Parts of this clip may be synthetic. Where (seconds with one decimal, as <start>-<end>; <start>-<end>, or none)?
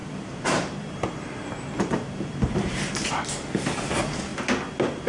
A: 0.0-3.1